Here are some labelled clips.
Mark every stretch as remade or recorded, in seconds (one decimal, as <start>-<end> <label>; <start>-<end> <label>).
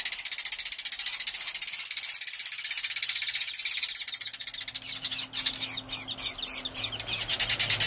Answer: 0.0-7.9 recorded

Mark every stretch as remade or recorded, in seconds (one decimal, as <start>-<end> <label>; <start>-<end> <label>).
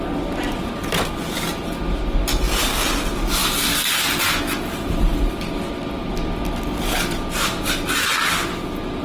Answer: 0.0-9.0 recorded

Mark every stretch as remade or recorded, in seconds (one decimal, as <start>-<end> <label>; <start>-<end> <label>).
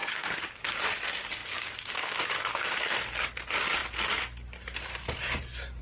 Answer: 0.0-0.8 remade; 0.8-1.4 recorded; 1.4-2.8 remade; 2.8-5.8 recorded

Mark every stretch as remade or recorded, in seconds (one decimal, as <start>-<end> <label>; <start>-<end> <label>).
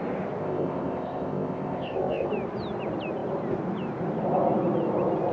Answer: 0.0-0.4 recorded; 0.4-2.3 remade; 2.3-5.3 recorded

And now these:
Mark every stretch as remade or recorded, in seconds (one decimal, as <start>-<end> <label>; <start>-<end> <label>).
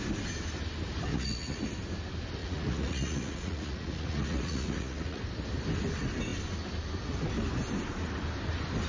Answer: 0.0-1.1 recorded; 1.1-1.7 remade; 1.7-2.4 recorded; 2.4-5.2 remade; 5.2-8.9 recorded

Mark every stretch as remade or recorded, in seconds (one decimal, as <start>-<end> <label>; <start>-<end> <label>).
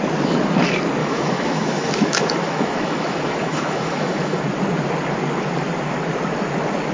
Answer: 0.0-1.0 recorded; 1.0-4.4 remade; 4.4-6.9 recorded